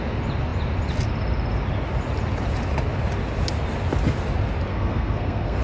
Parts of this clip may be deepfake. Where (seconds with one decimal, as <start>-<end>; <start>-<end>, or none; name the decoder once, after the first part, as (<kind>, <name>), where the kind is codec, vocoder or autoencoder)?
4.7-5.6 (codec, SNAC)